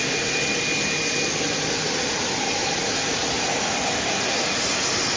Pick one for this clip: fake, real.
real